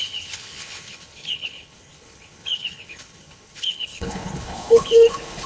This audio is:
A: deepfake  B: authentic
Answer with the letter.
A